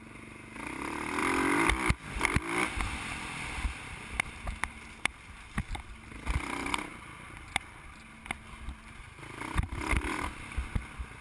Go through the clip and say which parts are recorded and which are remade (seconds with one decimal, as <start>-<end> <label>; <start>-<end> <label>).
0.0-1.2 recorded; 1.2-5.6 remade; 5.6-6.9 recorded; 6.9-10.3 remade; 10.3-11.2 recorded